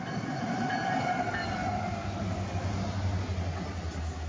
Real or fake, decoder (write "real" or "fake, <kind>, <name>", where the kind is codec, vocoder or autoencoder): real